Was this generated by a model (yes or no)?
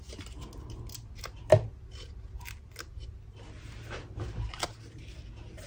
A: no